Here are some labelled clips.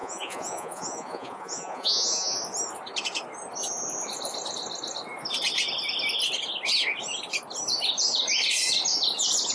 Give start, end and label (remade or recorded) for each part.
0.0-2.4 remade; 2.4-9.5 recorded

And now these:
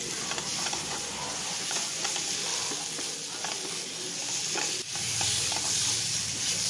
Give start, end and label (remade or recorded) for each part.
0.0-0.5 recorded; 0.5-2.1 remade; 2.1-6.7 recorded

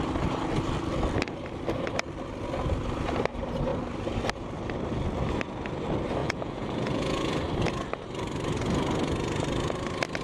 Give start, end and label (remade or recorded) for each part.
0.0-6.2 recorded; 6.2-7.3 remade; 7.3-10.2 recorded

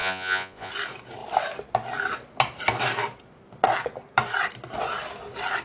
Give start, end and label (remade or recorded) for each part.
0.0-0.7 remade; 0.7-5.6 recorded